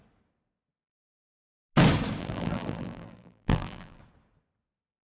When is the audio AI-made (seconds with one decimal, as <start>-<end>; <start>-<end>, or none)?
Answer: 2.2-4.0